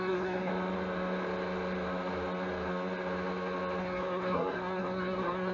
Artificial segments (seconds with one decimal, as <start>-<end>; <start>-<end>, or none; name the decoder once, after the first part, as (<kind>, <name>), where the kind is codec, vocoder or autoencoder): 0.0-0.5 (codec, SNAC); 3.8-5.5